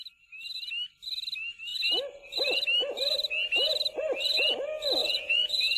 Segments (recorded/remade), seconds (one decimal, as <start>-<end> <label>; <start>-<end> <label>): 0.0-5.0 recorded; 5.0-5.8 remade